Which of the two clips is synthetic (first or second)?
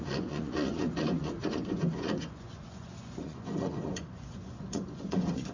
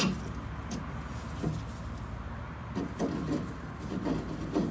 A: first